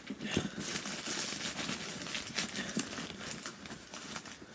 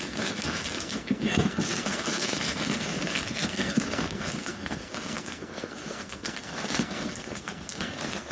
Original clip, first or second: first